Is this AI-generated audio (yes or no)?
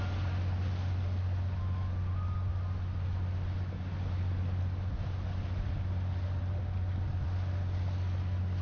no